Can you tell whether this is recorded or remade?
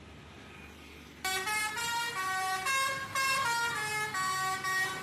recorded